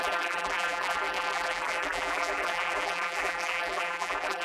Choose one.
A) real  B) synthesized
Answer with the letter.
B